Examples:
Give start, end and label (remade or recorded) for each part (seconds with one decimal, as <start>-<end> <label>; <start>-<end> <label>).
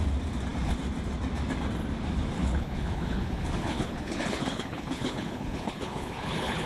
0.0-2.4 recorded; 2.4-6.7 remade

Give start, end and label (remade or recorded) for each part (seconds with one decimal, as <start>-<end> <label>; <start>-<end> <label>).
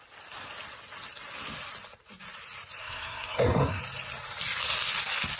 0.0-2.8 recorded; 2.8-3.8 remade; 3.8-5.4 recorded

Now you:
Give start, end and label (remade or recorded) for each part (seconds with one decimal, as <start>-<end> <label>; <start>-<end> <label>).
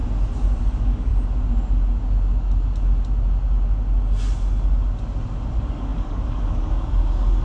0.0-0.6 recorded; 0.6-1.1 remade; 1.1-5.5 recorded; 5.5-7.4 remade